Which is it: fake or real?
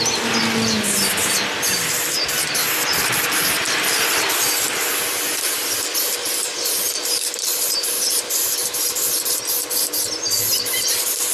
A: real